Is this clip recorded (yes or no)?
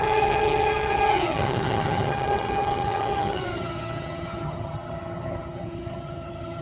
no